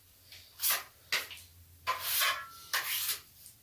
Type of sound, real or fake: real